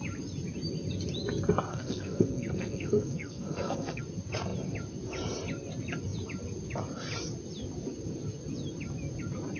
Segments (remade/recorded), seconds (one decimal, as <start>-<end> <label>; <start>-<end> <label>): 0.0-1.7 recorded; 1.7-4.0 remade; 4.0-9.6 recorded